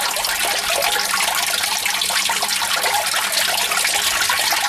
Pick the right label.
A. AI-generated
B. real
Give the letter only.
B